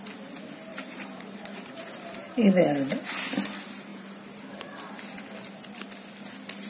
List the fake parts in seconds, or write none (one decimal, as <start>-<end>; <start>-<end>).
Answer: 0.7-3.1; 3.9-5.0